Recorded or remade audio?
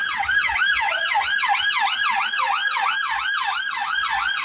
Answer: recorded